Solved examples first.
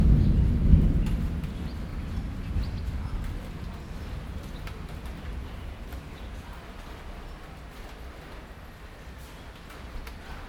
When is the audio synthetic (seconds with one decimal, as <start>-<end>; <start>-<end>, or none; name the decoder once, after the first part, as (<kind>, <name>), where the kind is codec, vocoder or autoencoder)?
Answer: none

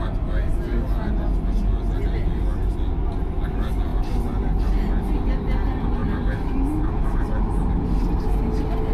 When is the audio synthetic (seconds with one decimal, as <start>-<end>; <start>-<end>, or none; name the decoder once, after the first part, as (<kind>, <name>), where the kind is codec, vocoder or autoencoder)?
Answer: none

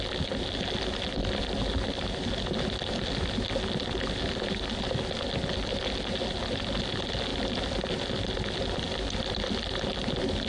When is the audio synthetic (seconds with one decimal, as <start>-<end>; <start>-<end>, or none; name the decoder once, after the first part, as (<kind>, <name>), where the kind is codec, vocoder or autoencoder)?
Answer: none

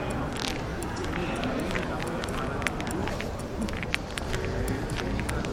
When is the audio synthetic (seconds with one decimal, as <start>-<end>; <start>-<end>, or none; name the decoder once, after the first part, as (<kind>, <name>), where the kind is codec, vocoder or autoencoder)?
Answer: 0.7-1.6 (vocoder, BigVGAN v2); 3.0-3.8

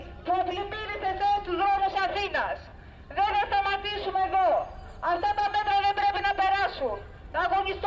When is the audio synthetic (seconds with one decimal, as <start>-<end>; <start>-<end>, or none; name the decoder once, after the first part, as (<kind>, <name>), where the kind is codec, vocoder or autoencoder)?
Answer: none

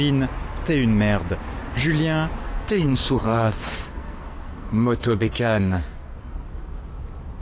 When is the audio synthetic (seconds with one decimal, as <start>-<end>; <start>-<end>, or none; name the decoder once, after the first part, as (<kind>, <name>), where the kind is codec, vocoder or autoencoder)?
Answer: 2.4-6.8 (codec, SNAC)